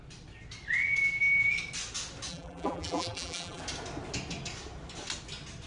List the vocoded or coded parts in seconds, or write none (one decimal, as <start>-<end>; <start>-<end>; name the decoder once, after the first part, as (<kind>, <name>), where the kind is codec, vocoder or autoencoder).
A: 2.3-3.6 (vocoder, BigVGAN v2)